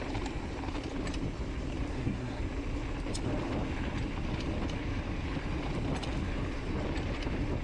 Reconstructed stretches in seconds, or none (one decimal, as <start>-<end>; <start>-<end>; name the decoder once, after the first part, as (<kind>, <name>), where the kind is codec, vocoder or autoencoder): 1.9-2.4 (codec, SNAC)